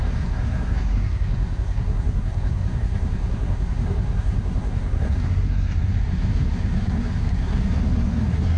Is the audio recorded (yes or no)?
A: no